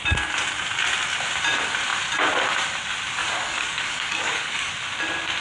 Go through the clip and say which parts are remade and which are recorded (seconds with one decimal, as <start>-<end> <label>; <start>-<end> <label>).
0.0-3.2 recorded; 3.2-4.7 remade; 4.7-5.4 recorded